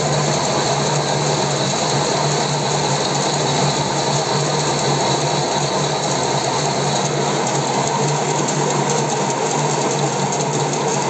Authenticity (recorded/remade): recorded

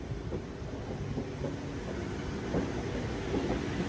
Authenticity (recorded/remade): recorded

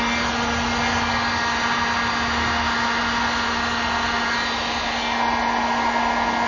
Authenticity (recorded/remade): recorded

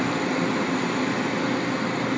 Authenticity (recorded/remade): recorded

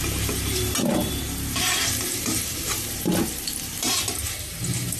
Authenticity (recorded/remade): remade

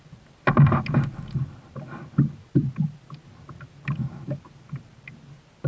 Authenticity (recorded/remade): recorded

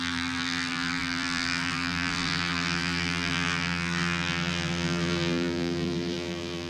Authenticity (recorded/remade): remade